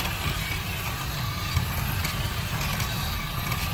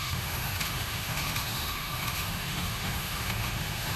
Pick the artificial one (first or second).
second